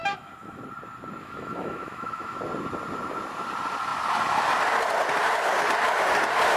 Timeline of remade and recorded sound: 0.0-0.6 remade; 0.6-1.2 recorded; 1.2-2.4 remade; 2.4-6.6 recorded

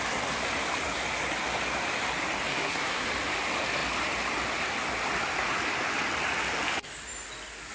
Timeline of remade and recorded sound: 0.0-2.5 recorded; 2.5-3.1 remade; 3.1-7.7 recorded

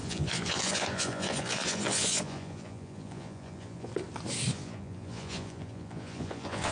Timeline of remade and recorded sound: 0.0-3.9 remade; 3.9-4.5 recorded; 4.5-6.7 remade

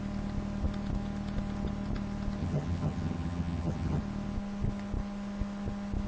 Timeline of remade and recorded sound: 0.0-2.4 recorded; 2.4-4.0 remade; 4.0-6.1 recorded